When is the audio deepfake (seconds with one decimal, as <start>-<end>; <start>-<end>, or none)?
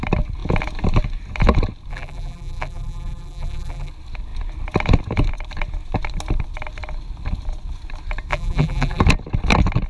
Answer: 1.9-3.9; 8.3-9.0